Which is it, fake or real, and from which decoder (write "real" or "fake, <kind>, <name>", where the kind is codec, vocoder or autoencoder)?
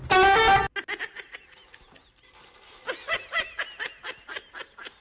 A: real